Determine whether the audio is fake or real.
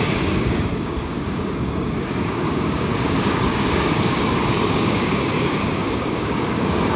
fake